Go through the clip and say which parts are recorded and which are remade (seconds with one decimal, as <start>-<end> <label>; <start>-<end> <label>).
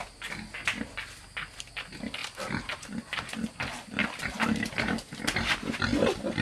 0.0-2.2 recorded; 2.2-3.0 remade; 3.0-4.0 recorded; 4.0-4.7 remade; 4.7-6.4 recorded